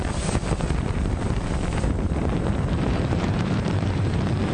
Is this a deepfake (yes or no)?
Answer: yes